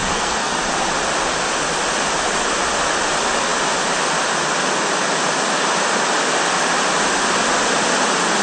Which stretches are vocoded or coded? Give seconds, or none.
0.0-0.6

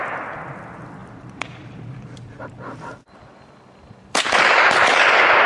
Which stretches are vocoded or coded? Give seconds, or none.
1.0-4.2

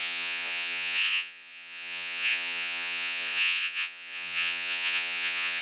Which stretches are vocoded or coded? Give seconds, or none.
0.0-5.6

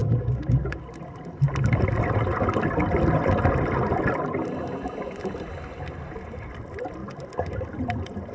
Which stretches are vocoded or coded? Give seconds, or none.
0.0-0.8

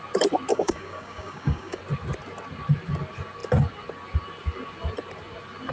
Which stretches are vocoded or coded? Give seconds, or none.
0.5-1.8

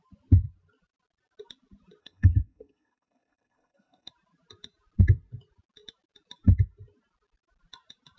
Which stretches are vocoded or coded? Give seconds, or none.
2.0-4.1

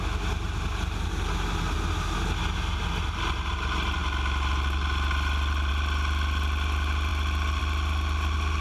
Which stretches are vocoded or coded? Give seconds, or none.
none

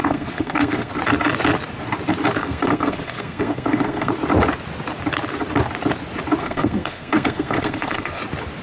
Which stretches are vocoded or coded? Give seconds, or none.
0.0-0.9; 2.4-4.1; 6.4-8.2